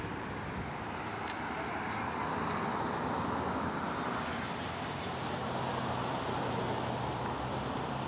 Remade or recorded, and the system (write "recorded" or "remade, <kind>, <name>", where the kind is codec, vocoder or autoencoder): recorded